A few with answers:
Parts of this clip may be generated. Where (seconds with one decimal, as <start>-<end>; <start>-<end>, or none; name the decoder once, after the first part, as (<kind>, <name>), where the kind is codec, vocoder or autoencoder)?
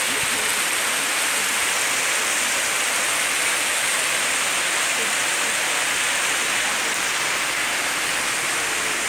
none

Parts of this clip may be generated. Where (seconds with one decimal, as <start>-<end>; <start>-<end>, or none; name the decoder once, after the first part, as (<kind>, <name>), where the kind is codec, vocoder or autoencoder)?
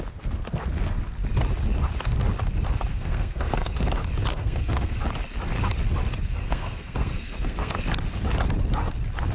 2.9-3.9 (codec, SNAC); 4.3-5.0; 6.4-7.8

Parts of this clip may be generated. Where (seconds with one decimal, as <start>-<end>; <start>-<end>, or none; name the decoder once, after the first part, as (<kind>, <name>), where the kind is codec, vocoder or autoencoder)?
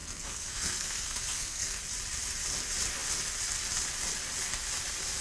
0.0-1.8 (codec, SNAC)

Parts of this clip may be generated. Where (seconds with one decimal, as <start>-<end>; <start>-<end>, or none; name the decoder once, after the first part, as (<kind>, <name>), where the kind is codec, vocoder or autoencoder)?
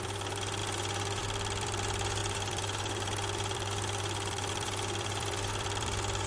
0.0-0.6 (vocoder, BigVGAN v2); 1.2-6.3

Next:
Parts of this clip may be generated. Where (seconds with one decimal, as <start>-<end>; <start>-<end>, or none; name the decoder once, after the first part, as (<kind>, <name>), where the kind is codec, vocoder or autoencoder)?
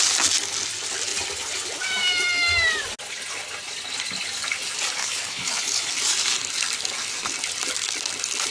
5.0-5.9 (codec, HILCodec)